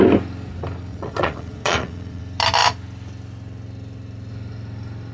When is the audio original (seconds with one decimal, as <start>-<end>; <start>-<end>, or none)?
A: 0.0-0.9; 2.2-5.1

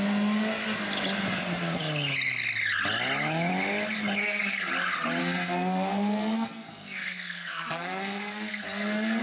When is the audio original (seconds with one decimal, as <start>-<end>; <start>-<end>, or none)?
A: 0.0-4.2; 4.7-5.2